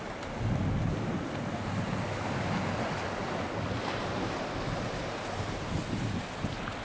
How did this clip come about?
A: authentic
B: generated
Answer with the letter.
A